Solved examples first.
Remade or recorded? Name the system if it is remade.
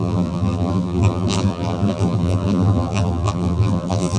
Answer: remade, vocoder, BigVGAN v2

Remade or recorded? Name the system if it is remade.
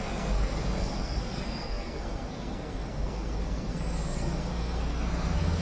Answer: remade, codec, SNAC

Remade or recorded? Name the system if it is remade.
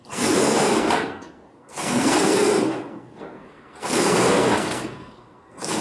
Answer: remade, codec, SNAC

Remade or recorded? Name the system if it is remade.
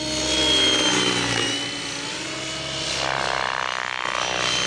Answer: recorded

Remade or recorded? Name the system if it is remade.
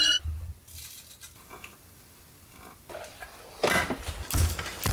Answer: recorded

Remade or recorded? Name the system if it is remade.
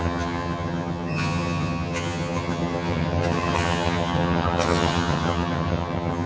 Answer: remade, vocoder, HiFi-GAN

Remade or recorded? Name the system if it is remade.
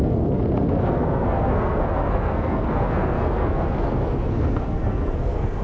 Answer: remade, codec, SNAC